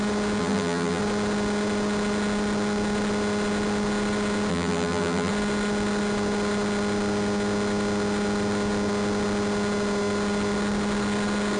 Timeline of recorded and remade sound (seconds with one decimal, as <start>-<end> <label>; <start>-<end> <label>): 0.0-0.4 recorded; 0.4-1.0 remade; 1.0-4.5 recorded; 4.5-5.3 remade; 5.3-11.6 recorded